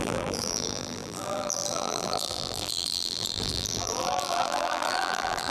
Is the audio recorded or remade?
remade